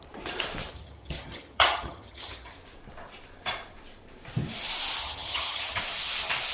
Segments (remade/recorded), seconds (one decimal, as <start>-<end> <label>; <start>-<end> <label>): 0.0-0.7 recorded; 0.7-2.5 remade; 2.5-5.0 recorded; 5.0-5.8 remade; 5.8-6.5 recorded